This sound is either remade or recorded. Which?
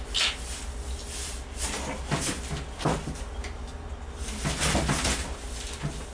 recorded